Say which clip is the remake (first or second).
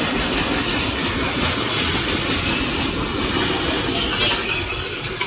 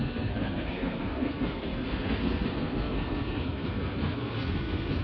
second